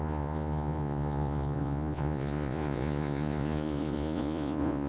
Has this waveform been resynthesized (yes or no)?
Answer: yes